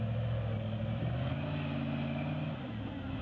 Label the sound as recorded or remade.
recorded